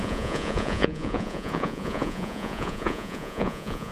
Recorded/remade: remade